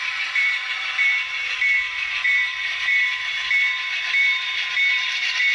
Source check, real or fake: fake